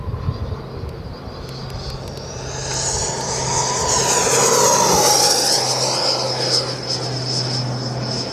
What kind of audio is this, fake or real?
real